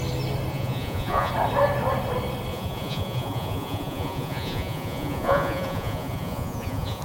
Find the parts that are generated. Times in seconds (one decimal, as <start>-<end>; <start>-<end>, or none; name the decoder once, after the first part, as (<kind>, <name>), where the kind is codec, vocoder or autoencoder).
0.5-1.3 (vocoder, Vocos); 2.5-7.0